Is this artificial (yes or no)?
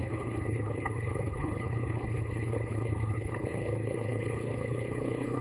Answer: yes